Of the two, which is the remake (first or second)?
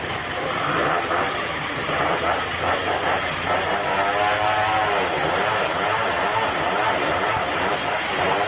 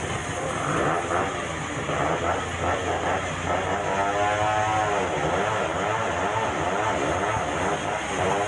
first